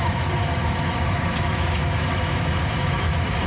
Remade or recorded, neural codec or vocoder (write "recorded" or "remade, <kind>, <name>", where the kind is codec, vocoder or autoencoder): remade, autoencoder, DAC-VAE